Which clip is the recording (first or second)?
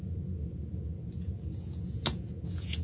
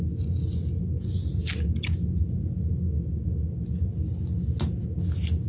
second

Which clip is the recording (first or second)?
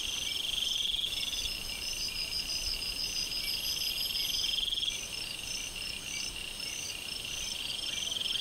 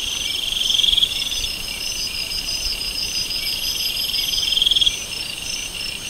first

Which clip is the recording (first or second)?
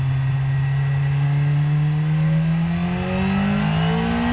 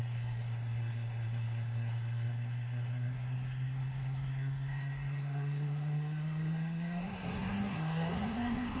first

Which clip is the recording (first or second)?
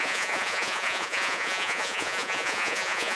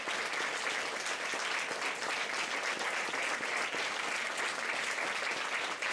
second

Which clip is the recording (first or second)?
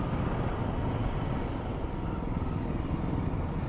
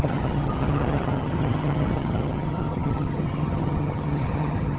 first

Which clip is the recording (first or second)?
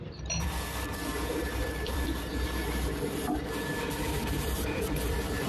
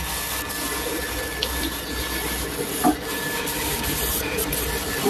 second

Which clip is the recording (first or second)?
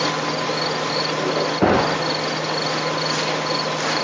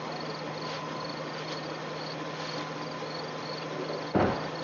first